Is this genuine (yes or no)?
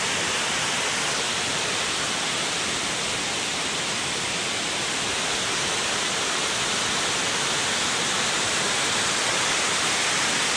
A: yes